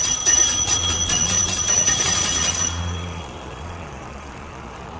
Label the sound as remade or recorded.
remade